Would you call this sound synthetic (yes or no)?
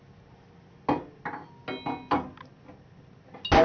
no